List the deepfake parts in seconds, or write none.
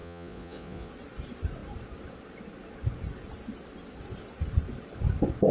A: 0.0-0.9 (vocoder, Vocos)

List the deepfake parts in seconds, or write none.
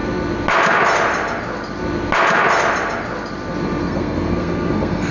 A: 3.8-5.1 (codec, SNAC)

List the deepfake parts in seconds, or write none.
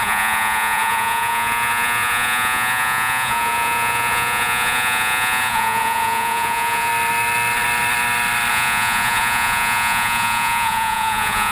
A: 0.0-6.9 (vocoder, Vocos); 8.5-11.5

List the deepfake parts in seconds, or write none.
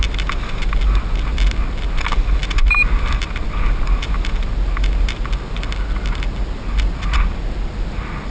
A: none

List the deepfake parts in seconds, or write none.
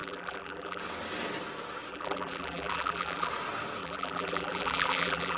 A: 0.0-0.8 (vocoder, BigVGAN v2); 1.9-3.3; 3.8-5.4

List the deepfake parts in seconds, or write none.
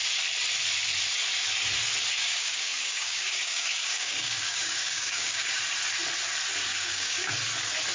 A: 2.2-5.6 (codec, DAC); 6.7-7.3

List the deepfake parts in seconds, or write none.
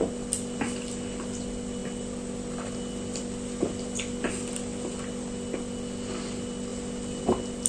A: none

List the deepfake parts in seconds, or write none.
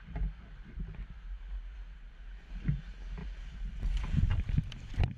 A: none